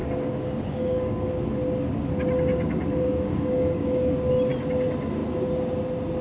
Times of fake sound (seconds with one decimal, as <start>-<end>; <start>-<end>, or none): 0.0-1.3; 2.5-4.3